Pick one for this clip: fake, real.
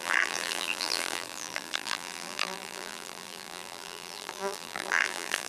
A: fake